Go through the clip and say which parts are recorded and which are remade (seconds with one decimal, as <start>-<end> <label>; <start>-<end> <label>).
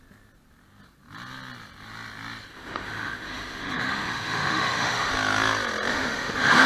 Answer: 0.0-2.5 recorded; 2.5-5.1 remade; 5.1-5.9 recorded; 5.9-6.7 remade